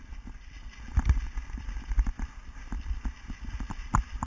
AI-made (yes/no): no